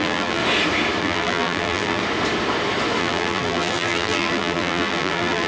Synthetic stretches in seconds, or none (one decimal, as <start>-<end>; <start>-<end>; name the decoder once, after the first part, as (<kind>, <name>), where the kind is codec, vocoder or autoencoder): 0.0-0.4 (vocoder, BigVGAN v2); 1.0-2.0; 3.0-5.5